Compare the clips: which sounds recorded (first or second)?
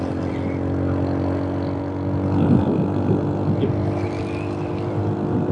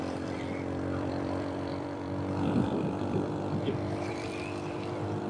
first